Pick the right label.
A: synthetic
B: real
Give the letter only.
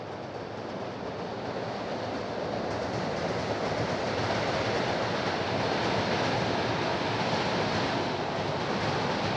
B